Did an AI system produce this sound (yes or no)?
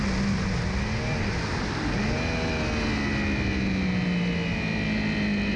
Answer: no